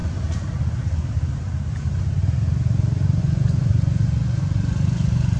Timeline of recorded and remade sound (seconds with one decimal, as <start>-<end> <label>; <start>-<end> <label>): 0.0-3.2 recorded; 3.2-5.4 remade